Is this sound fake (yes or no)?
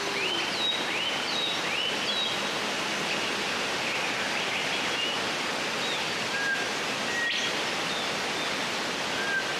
no